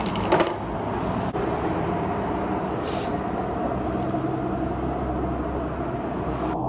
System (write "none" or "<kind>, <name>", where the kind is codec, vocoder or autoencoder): none